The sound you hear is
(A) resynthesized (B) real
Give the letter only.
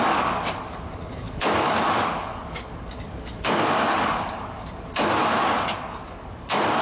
A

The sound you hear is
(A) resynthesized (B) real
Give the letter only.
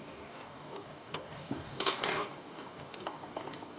A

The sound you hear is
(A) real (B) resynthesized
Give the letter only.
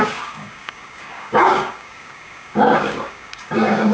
B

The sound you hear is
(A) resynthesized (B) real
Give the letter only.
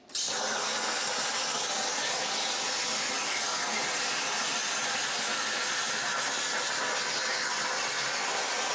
B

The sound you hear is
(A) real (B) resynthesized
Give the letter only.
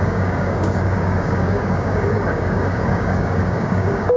B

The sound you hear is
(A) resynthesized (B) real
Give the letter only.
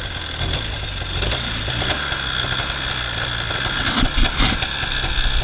B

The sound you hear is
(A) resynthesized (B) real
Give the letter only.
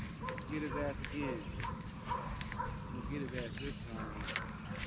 B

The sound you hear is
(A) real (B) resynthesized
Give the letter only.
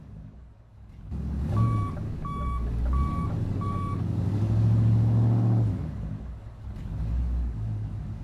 B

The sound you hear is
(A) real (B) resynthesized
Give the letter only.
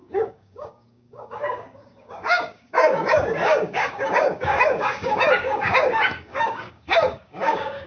B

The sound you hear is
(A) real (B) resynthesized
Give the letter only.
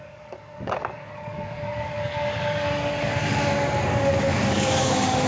B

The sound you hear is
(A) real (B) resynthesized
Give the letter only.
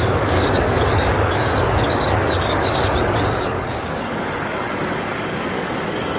B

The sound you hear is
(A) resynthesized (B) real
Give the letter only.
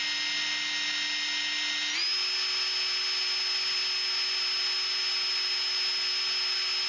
B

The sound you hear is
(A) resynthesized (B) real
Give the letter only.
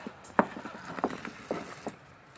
B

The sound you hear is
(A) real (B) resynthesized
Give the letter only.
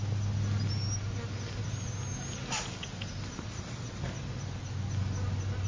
A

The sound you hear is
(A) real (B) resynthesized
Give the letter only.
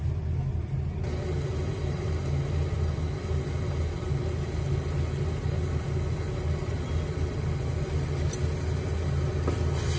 A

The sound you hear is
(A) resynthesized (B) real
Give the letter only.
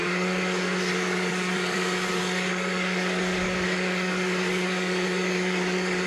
A